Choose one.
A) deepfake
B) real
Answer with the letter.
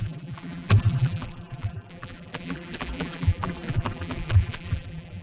A